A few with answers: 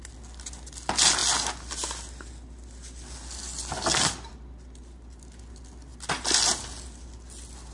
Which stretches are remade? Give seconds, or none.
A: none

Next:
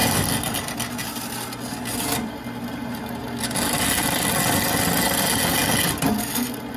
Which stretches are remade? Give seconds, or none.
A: none

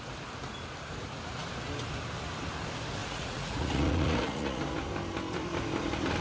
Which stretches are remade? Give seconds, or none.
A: 3.0-4.6 (vocoder, Vocos)

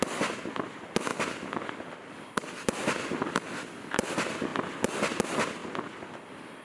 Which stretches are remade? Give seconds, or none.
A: none

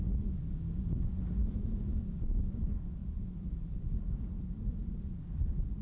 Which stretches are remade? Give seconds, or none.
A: none

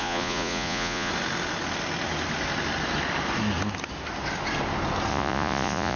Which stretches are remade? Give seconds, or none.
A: 0.0-1.1 (vocoder, Vocos); 5.1-6.0